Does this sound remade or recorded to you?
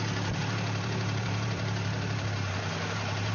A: remade